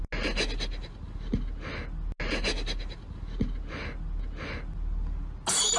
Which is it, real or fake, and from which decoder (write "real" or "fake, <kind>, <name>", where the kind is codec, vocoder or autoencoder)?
real